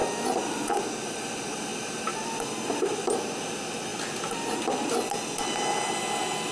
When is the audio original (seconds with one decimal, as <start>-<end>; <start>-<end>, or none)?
0.0-6.5